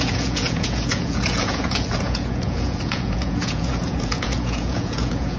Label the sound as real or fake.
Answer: fake